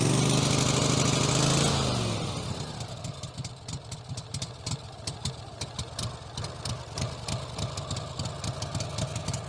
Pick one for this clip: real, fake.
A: real